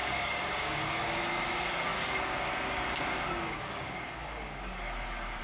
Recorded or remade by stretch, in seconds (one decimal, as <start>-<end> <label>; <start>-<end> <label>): 0.0-5.4 remade